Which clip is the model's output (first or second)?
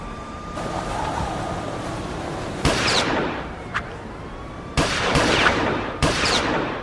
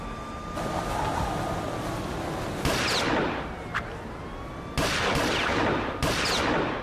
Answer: first